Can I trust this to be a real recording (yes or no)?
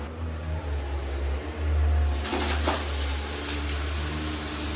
yes